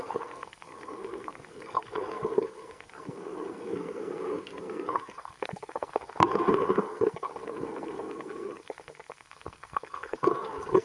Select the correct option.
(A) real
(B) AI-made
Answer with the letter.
B